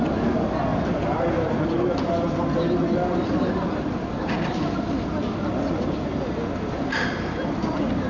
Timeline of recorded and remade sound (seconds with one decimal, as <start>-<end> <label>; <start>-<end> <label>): 0.0-8.1 recorded